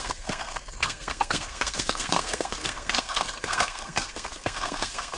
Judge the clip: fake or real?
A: fake